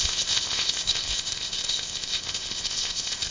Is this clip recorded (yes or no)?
no